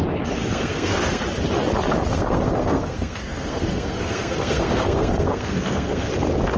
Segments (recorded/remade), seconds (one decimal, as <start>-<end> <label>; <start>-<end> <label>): 0.0-0.4 recorded; 0.4-1.2 remade; 1.2-2.1 recorded; 2.1-6.1 remade; 6.1-6.6 recorded